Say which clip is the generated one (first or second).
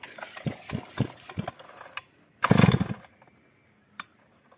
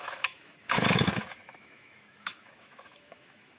second